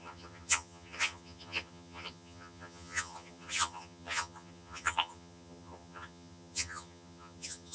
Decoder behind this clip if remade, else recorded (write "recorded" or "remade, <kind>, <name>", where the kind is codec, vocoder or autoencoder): remade, vocoder, HiFi-GAN